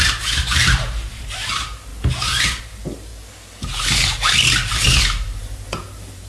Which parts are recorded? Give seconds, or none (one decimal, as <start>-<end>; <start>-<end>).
1.9-2.6; 3.1-5.7